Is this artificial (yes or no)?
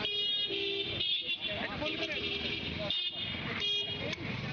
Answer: no